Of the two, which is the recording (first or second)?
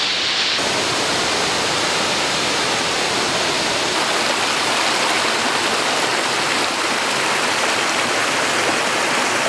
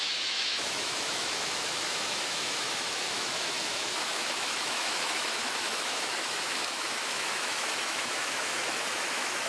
first